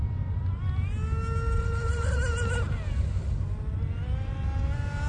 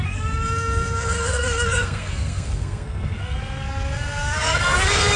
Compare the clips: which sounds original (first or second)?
first